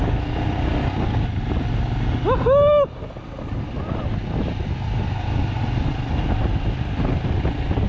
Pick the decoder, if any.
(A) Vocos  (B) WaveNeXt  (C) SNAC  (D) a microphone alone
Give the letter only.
D